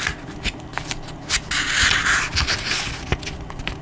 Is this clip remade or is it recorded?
recorded